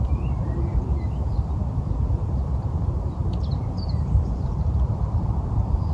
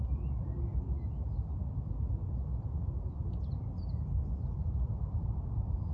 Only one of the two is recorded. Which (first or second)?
second